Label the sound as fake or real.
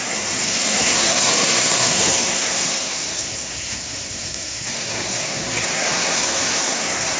fake